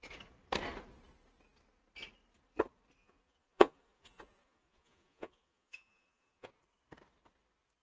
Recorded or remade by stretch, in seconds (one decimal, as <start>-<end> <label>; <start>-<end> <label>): 0.0-3.0 recorded; 3.0-6.5 remade; 6.5-7.8 recorded

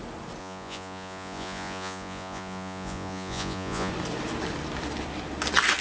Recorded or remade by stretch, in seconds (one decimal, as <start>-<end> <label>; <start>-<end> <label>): 0.0-0.4 recorded; 0.4-3.9 remade; 3.9-5.8 recorded